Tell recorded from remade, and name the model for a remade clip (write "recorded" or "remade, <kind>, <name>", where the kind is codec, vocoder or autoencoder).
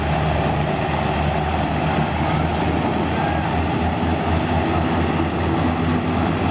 recorded